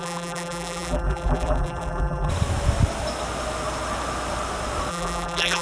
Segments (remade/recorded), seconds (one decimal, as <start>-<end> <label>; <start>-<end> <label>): 0.0-2.3 remade; 2.3-4.9 recorded; 4.9-5.6 remade